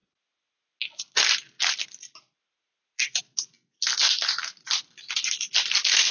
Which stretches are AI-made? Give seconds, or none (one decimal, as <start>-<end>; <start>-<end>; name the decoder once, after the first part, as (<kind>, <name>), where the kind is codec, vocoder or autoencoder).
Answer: none